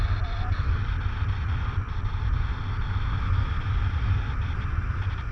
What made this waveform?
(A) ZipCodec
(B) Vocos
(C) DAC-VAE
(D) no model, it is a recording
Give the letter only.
D